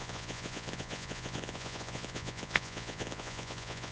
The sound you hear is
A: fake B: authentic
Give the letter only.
A